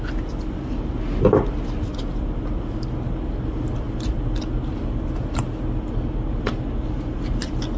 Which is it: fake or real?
real